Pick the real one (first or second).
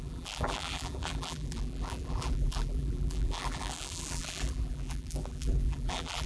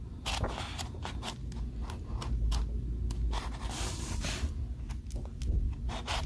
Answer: second